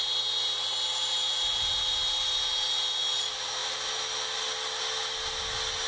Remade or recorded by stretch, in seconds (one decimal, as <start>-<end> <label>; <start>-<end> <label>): 0.0-5.9 recorded